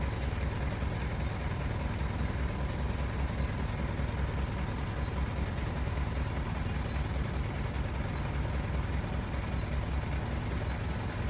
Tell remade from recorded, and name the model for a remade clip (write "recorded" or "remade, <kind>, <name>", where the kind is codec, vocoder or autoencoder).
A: recorded